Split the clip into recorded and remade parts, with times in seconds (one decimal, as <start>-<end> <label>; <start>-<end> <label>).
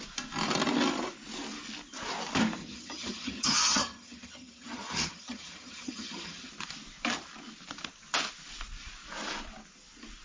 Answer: 0.0-2.6 recorded; 2.6-6.5 remade; 6.5-10.2 recorded